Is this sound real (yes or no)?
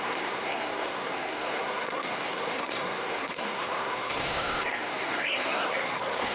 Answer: no